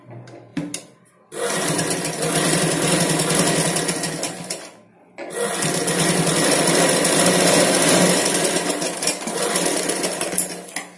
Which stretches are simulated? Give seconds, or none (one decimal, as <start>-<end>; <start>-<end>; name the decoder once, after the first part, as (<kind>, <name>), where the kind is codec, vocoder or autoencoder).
none